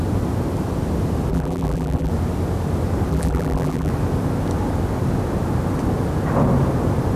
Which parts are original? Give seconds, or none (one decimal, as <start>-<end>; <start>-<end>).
0.0-1.3; 2.1-3.1; 3.9-7.2